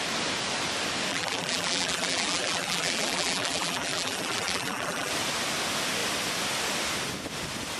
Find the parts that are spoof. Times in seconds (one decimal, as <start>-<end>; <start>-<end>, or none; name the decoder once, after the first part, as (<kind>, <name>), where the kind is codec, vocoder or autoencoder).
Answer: 1.1-5.1 (vocoder, BigVGAN v2)